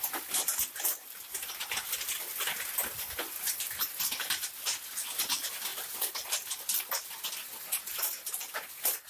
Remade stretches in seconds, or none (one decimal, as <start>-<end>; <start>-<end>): none